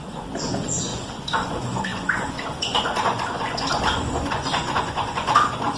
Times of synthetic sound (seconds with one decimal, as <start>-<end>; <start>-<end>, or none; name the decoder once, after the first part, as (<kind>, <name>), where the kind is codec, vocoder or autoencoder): 0.0-5.8 (vocoder, Vocos)

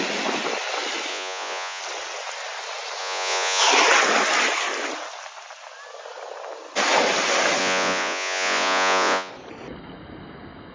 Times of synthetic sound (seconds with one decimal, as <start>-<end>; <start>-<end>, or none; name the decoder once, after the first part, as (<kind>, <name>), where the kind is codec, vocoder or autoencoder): 1.1-1.8 (vocoder, Vocos); 3.0-3.6; 7.6-9.3

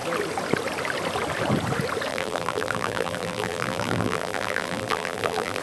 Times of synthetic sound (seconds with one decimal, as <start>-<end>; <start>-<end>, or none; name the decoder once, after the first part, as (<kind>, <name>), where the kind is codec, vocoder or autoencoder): 2.1-5.6 (vocoder, BigVGAN v2)

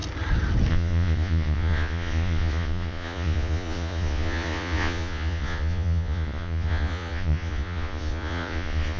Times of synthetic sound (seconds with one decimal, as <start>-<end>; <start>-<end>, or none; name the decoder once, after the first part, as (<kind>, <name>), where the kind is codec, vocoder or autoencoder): 0.7-9.0 (vocoder, Vocos)

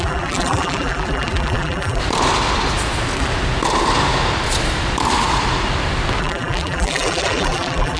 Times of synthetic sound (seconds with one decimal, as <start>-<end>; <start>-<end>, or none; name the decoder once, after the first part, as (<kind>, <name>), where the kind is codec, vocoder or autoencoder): 0.0-2.0 (vocoder, BigVGAN v2); 6.2-8.0

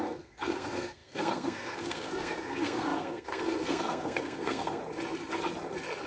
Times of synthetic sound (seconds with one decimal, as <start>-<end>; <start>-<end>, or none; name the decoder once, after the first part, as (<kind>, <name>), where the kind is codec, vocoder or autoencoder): 0.0-4.8 (codec, SNAC)

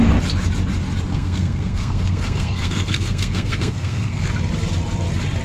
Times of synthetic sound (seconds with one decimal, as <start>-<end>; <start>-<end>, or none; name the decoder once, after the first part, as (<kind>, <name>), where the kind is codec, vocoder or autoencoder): 1.1-4.3 (codec, SNAC)

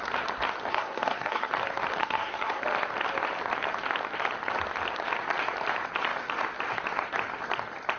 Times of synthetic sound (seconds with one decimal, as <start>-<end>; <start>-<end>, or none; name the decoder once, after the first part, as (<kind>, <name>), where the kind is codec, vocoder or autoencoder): 0.7-1.5 (codec, SNAC); 2.0-2.6